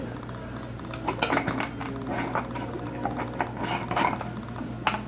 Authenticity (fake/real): real